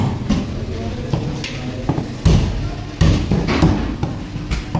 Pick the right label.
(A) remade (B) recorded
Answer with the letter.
B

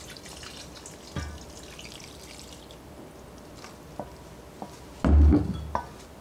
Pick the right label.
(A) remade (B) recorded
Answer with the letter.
B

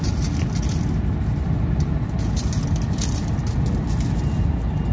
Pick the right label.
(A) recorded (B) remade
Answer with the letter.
A